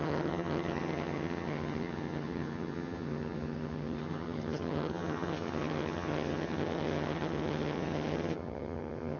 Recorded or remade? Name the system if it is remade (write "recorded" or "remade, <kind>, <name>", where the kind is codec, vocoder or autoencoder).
remade, vocoder, HiFi-GAN